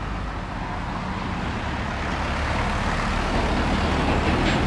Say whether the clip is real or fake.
real